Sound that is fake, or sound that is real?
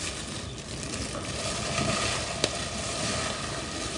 real